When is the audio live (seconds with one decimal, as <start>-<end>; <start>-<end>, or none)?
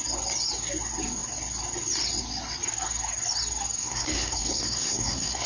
0.0-3.8